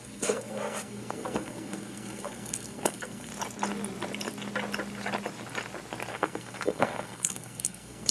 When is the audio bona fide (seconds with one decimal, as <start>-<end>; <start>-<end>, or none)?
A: 3.3-6.1

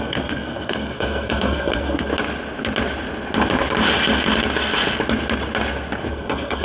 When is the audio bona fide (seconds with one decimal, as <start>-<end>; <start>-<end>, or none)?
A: 2.1-6.1

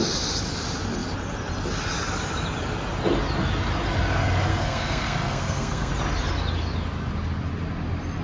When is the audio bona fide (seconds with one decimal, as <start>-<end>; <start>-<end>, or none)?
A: 0.0-4.5; 5.9-8.2

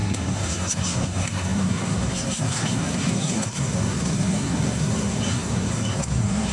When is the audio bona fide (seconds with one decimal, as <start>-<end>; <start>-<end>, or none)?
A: none